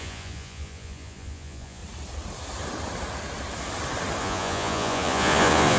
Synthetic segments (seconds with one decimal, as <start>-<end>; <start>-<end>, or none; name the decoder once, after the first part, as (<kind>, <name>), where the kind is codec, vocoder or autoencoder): 0.0-1.8 (vocoder, Vocos); 4.2-5.8